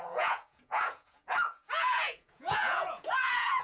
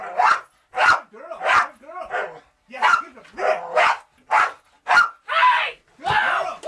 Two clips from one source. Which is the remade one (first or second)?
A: first